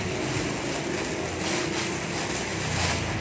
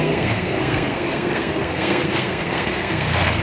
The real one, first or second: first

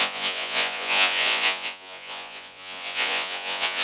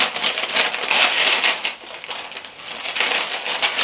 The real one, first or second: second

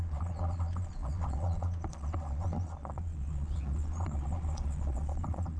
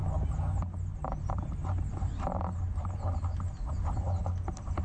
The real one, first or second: second